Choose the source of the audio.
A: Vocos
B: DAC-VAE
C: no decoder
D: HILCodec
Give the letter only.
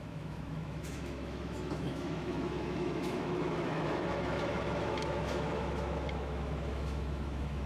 B